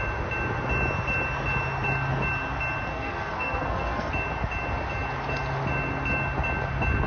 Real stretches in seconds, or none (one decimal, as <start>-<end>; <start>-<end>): 0.0-2.9; 4.1-7.1